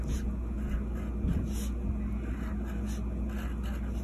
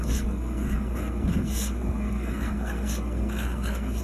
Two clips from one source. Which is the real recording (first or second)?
first